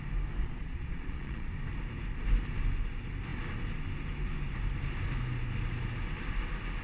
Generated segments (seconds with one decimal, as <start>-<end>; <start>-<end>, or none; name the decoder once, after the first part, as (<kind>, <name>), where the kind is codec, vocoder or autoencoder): 0.4-1.5 (vocoder, Vocos)